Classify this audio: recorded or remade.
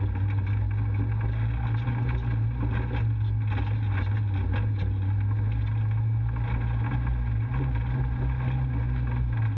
recorded